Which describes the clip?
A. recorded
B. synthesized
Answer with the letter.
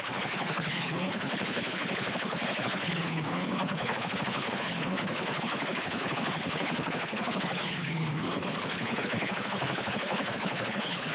B